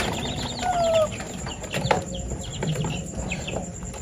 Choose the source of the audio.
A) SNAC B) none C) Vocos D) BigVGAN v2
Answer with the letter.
D